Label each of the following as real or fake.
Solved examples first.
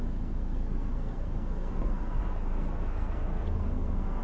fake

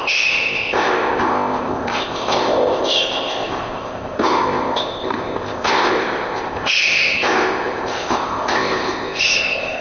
fake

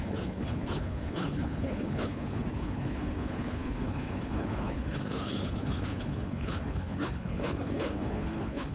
fake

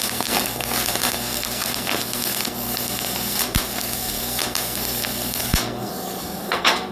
fake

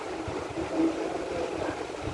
real